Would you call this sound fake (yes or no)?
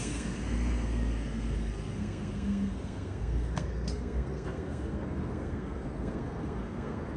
yes